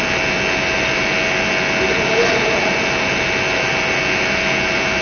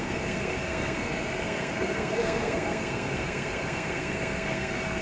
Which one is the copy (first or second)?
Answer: second